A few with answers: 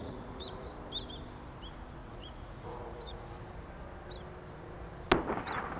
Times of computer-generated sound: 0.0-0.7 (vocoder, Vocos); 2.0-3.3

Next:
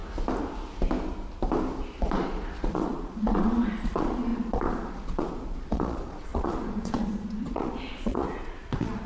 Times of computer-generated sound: 2.0-9.1 (vocoder, Vocos)

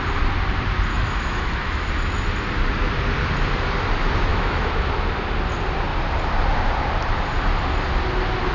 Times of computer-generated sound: 0.9-1.9 (autoencoder, DAC-VAE); 4.3-4.9

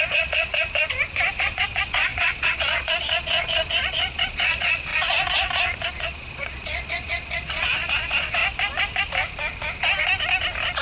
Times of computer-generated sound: 0.0-0.5 (vocoder, Vocos); 1.3-4.9; 5.9-8.4

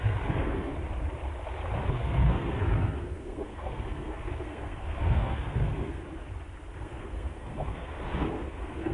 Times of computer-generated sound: 0.0-0.7 (codec, SNAC); 1.9-6.0; 6.8-8.9

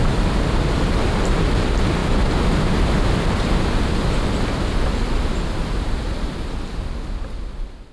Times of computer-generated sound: none

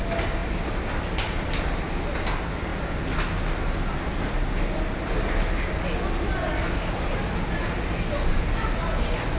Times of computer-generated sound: none

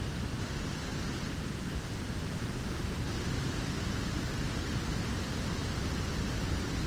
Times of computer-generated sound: 5.6-6.9 (vocoder, BigVGAN v2)